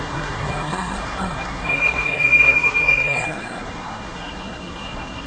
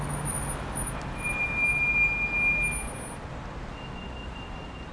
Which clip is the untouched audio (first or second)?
second